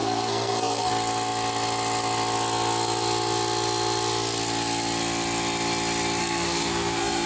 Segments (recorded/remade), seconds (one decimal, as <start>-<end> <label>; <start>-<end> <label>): 0.0-0.9 remade; 0.9-6.2 recorded; 6.2-7.3 remade